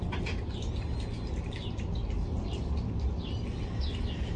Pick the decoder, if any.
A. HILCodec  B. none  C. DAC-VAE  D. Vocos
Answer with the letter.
B